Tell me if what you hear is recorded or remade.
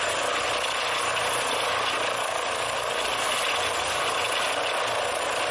recorded